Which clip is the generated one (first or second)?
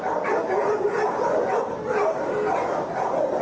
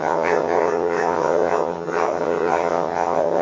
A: second